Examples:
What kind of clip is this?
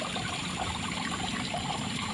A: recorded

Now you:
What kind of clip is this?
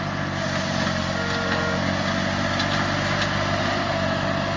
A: recorded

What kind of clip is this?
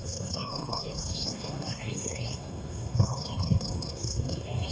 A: remade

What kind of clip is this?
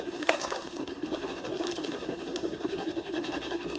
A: remade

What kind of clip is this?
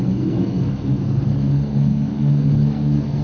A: remade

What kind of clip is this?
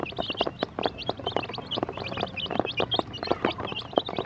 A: recorded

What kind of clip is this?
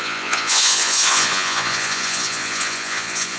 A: remade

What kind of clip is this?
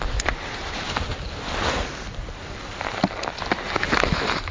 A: recorded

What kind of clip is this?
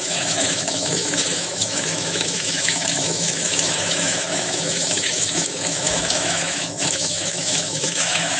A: remade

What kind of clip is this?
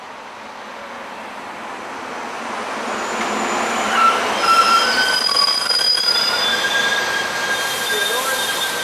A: recorded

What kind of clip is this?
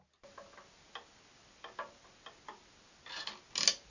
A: recorded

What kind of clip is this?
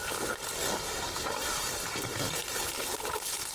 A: recorded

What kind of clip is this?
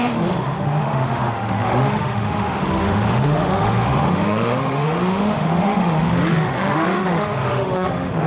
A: remade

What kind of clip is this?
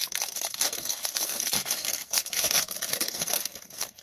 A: remade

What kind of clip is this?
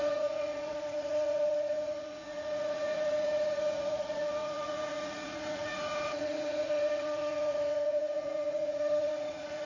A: remade